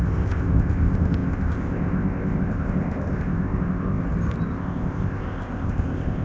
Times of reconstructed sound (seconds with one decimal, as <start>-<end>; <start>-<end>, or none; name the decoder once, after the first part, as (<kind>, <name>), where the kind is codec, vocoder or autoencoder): 0.0-4.0 (codec, ZipCodec); 4.5-6.2